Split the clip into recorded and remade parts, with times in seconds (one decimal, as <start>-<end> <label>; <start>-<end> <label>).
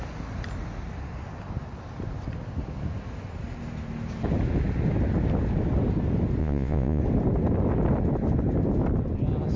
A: 0.0-6.4 recorded; 6.4-7.0 remade; 7.0-9.6 recorded